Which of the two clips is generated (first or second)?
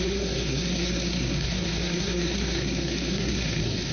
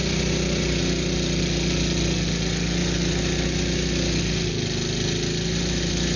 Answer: first